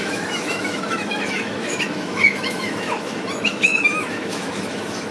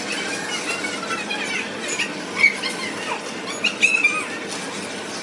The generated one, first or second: first